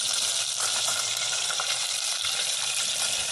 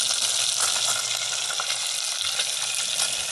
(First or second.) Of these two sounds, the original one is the second